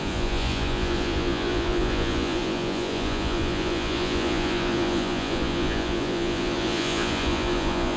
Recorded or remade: remade